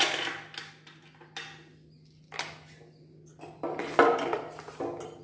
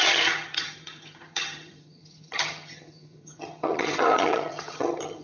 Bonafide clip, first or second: first